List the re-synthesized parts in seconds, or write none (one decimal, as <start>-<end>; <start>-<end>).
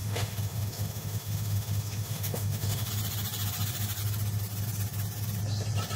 0.0-2.9